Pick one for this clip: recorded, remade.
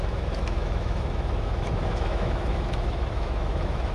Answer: remade